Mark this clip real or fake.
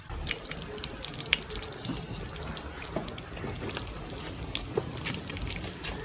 real